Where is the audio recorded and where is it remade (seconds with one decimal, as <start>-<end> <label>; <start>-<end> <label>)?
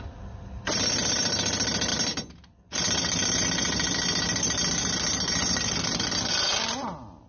0.0-7.3 recorded